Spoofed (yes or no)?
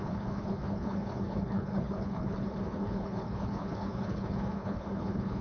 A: yes